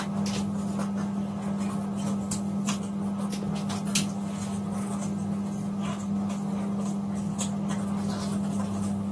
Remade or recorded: recorded